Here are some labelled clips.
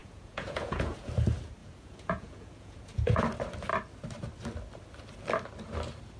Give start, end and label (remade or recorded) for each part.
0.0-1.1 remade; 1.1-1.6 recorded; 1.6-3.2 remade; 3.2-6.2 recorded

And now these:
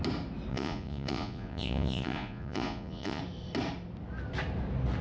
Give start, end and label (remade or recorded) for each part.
0.0-0.5 recorded; 0.5-3.2 remade; 3.2-5.0 recorded

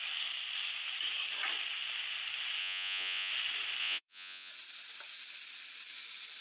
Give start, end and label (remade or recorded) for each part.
0.0-2.6 recorded; 2.6-3.3 remade; 3.3-3.8 recorded; 3.8-4.5 remade; 4.5-6.4 recorded

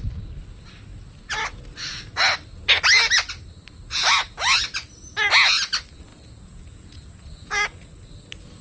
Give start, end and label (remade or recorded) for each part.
0.0-6.1 recorded; 6.1-7.9 remade; 7.9-8.6 recorded

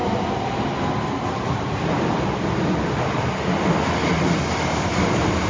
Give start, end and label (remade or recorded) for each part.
0.0-5.5 recorded